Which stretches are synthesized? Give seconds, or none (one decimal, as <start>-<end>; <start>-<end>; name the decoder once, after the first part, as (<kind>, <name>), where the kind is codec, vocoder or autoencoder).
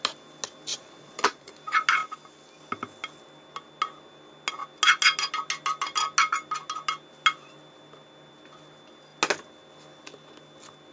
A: 0.7-1.5 (vocoder, Vocos)